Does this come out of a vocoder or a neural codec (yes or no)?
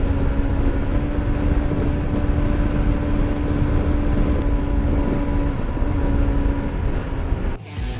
no